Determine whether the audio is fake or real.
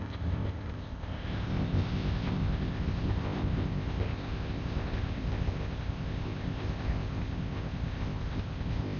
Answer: fake